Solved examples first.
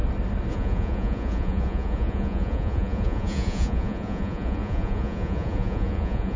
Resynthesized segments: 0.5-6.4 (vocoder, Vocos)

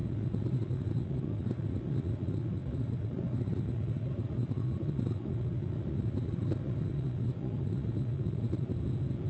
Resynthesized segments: 0.0-8.7 (vocoder, Vocos)